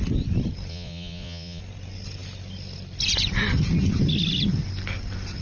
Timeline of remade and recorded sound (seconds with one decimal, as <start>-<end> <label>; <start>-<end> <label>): 0.0-0.7 recorded; 0.7-1.6 remade; 1.6-5.4 recorded